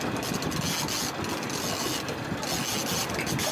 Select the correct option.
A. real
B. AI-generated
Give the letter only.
A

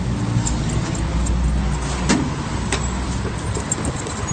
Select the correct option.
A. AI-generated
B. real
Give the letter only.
B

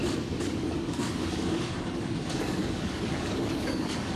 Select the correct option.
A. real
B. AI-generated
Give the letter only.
B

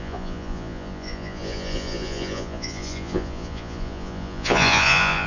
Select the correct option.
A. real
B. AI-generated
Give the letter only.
B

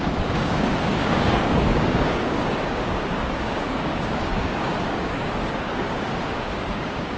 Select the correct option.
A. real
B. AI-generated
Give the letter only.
B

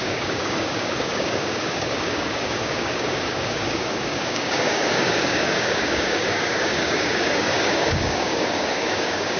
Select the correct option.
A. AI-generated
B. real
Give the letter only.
A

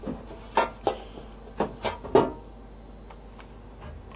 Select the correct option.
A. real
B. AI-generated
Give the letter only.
A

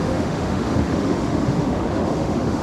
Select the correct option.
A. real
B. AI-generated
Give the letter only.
B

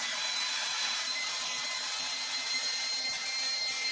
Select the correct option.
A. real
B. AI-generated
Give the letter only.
B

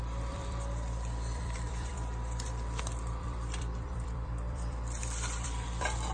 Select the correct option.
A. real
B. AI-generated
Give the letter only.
B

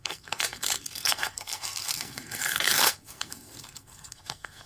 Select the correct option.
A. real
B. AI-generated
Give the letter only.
B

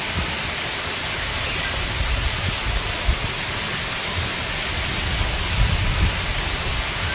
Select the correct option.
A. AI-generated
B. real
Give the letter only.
B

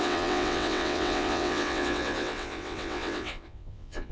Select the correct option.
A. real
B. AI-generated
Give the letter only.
B